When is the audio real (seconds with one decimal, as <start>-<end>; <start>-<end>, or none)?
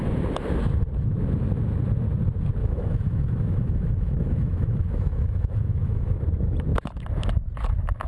0.0-2.6; 6.2-8.1